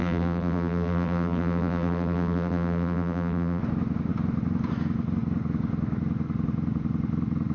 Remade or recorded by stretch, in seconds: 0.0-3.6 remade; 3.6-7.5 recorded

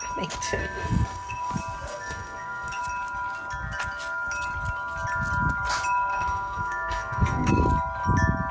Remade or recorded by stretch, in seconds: 0.0-0.6 recorded; 0.6-1.5 remade; 1.5-1.9 recorded; 1.9-2.8 remade; 2.8-6.1 recorded; 6.1-7.5 remade; 7.5-8.5 recorded

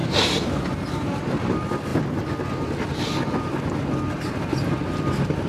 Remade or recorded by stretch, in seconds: 0.0-1.0 remade; 1.0-5.5 recorded

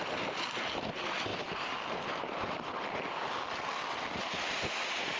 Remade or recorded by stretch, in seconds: 0.0-5.2 recorded

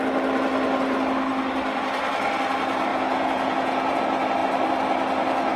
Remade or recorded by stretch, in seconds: 0.0-2.9 recorded; 2.9-4.0 remade; 4.0-5.6 recorded

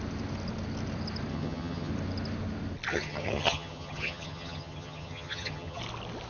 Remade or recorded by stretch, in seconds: 0.0-1.3 recorded; 1.3-1.9 remade; 1.9-2.9 recorded; 2.9-5.8 remade; 5.8-6.3 recorded

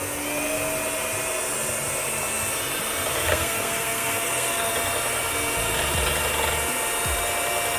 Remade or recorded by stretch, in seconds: 0.0-3.3 recorded; 3.3-4.7 remade; 4.7-7.8 recorded